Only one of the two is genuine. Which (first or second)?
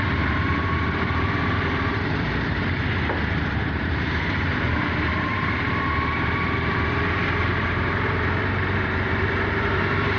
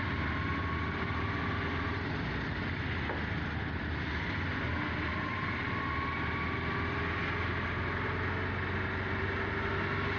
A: second